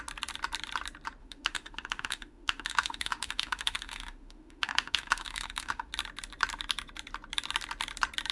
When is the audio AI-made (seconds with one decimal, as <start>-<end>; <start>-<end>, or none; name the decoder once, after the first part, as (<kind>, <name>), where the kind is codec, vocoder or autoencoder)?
1.2-5.9 (autoencoder, DAC-VAE)